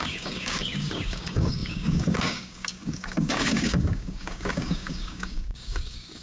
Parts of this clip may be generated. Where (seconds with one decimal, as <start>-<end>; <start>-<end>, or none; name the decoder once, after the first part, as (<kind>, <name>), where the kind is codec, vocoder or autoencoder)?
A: 0.0-6.2 (codec, DAC)